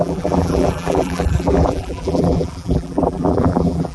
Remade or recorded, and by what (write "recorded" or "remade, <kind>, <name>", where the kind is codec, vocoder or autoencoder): remade, vocoder, BigVGAN v2